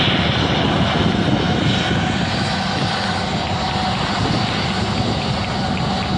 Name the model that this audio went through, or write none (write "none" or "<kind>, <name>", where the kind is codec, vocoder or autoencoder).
none